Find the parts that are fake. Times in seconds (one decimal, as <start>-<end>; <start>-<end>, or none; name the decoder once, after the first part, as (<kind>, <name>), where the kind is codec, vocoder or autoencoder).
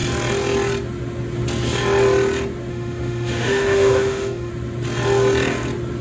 2.7-4.5 (autoencoder, DAC-VAE)